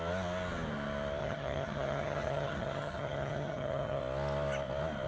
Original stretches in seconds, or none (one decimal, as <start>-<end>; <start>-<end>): 0.0-1.2; 4.0-5.1